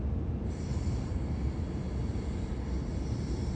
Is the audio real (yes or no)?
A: yes